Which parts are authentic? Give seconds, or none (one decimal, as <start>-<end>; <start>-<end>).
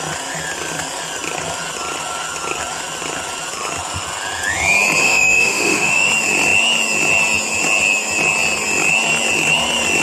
0.0-5.0; 6.1-10.0